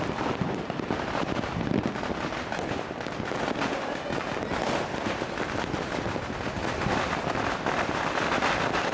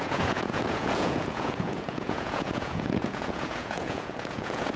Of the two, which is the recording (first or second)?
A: first